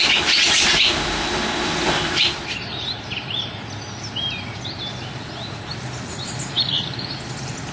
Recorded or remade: recorded